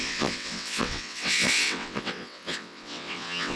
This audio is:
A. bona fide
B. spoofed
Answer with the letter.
B